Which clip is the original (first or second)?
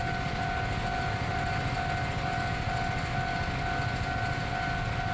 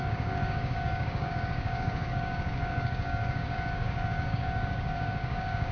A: first